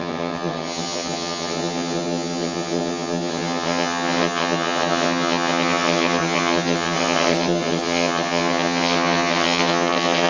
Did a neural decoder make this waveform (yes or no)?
yes